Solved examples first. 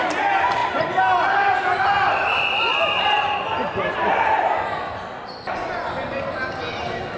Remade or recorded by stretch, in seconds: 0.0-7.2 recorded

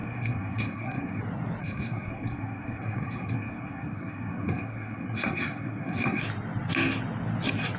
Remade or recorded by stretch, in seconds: 0.0-1.2 remade; 1.2-1.6 recorded; 1.6-6.2 remade; 6.2-7.8 recorded